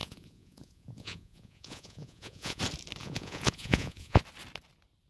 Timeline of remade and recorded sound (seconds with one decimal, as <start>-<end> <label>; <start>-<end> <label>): 0.0-2.6 remade; 2.6-3.0 recorded; 3.0-4.2 remade; 4.2-5.1 recorded